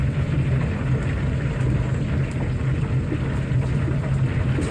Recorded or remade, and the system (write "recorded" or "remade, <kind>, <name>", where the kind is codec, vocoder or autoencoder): recorded